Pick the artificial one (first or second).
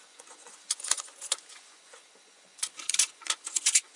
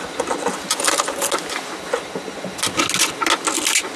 first